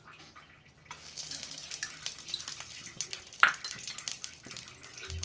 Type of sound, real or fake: real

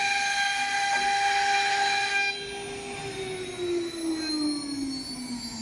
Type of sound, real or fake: real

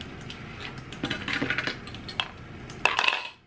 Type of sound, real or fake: real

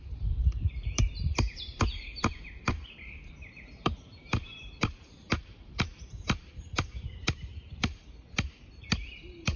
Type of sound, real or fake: fake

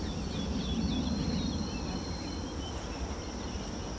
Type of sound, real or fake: real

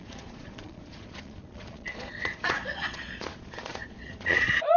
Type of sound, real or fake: fake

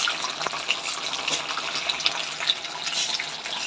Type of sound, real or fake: real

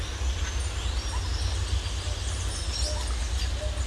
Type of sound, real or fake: real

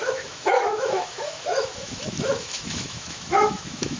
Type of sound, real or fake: fake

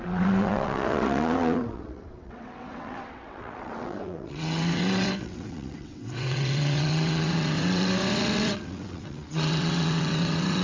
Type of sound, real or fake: fake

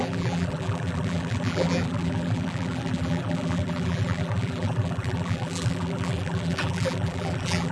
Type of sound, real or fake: fake